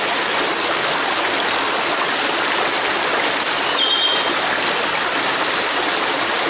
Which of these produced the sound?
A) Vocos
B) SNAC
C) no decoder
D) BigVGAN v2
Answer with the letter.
C